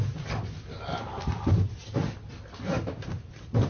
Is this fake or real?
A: real